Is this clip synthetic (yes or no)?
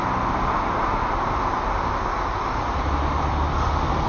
no